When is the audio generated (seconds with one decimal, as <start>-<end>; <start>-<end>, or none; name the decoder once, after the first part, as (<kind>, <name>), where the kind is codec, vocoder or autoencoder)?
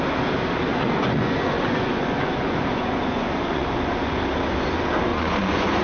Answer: 0.7-4.2 (vocoder, Vocos); 5.1-5.8